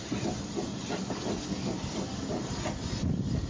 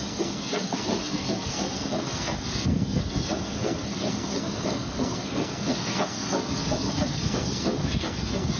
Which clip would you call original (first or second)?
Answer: first